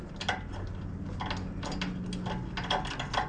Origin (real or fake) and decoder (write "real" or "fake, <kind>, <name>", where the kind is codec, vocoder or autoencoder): real